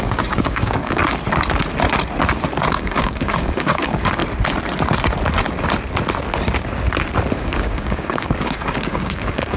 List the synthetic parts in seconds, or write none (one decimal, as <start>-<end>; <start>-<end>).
0.0-1.0; 2.7-4.2; 7.3-9.6